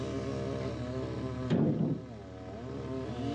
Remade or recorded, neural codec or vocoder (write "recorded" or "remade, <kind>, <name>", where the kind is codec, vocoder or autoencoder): recorded